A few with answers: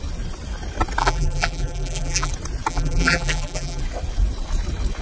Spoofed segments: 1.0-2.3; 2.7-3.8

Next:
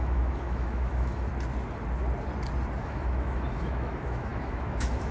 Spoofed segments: 0.0-1.3; 2.8-5.1

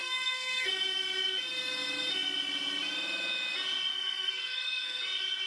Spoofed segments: 0.0-0.7; 3.9-5.0

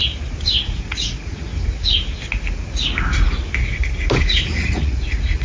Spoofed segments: 0.5-1.5; 4.7-5.4

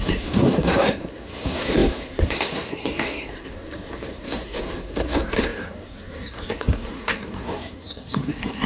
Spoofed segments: 0.0-8.7

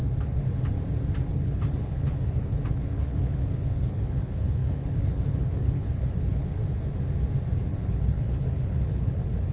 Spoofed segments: 1.3-6.6; 7.7-9.5

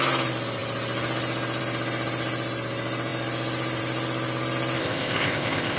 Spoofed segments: 4.8-5.8

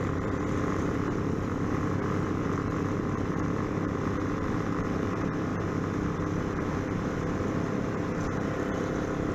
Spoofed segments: 0.0-9.3